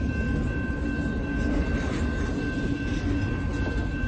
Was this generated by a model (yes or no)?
no